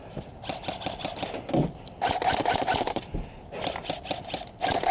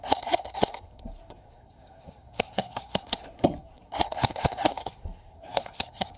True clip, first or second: first